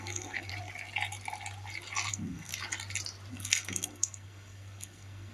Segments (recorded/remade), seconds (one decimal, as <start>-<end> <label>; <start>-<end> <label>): 0.0-0.5 remade; 0.5-2.1 recorded; 2.1-2.5 remade; 2.5-3.3 recorded; 3.3-5.3 remade